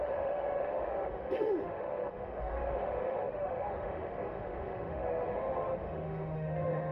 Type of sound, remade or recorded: remade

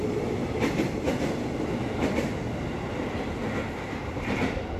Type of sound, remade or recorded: recorded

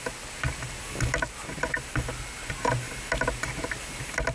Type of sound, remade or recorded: recorded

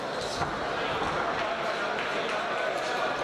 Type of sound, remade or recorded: recorded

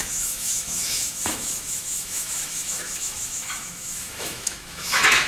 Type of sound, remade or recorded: remade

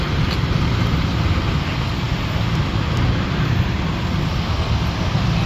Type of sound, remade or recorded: recorded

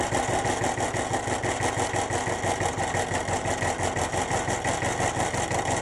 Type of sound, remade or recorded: recorded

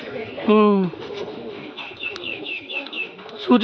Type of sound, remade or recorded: remade